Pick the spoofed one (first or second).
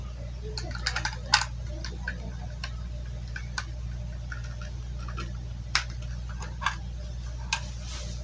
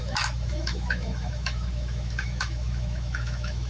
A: second